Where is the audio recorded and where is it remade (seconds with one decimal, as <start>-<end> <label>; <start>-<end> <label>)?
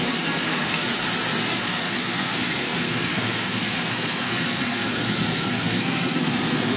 0.0-0.9 remade; 0.9-1.5 recorded; 1.5-6.8 remade